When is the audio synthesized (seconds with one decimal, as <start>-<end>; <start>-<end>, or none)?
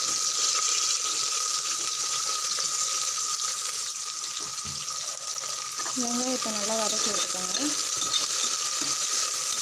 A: 1.5-4.0